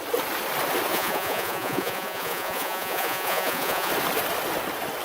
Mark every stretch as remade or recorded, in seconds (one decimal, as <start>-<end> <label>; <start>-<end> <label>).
0.0-0.9 recorded; 0.9-3.9 remade; 3.9-5.0 recorded

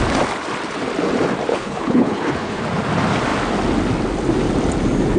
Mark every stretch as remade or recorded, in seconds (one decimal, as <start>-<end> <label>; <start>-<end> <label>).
0.0-1.5 recorded; 1.5-2.6 remade; 2.6-5.2 recorded

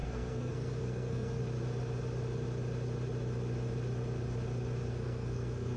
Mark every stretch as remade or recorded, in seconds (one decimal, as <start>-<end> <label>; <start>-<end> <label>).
0.0-1.4 remade; 1.4-4.9 recorded; 4.9-5.8 remade

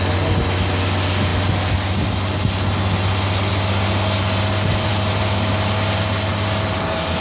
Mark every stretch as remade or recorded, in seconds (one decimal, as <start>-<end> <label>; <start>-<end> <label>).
0.0-4.9 recorded; 4.9-6.3 remade; 6.3-7.2 recorded

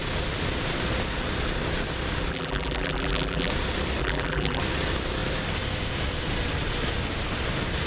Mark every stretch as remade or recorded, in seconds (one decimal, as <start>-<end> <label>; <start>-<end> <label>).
0.0-2.3 recorded; 2.3-3.5 remade; 3.5-4.0 recorded; 4.0-4.6 remade; 4.6-7.9 recorded

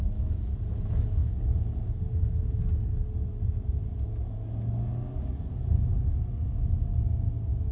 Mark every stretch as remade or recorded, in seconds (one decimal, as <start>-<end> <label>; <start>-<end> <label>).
0.0-7.7 recorded